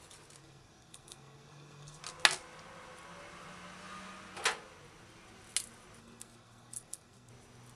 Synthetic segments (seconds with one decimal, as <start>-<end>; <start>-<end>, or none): 0.4-2.0; 6.0-7.3